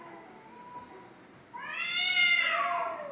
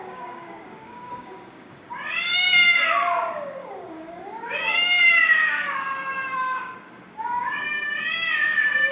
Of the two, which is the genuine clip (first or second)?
first